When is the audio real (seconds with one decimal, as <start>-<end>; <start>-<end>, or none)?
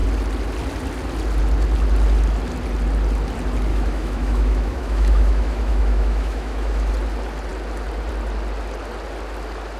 0.0-3.7; 6.9-9.8